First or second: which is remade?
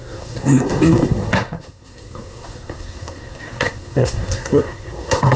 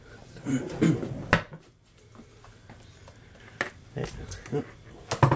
first